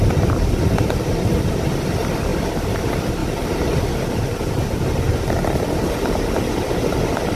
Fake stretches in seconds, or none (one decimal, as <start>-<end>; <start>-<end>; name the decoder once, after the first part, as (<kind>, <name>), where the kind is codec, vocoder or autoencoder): 0.0-2.3 (vocoder, BigVGAN v2); 2.8-3.2